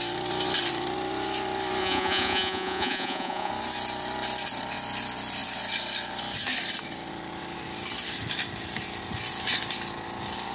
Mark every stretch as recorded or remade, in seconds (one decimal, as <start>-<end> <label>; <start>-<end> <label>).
0.0-1.8 recorded; 1.8-3.5 remade; 3.5-10.5 recorded